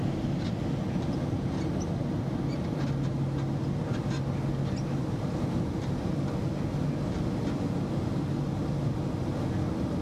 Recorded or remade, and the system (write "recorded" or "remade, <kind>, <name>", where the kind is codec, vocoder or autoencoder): recorded